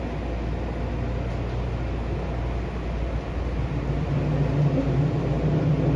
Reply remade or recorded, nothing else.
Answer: recorded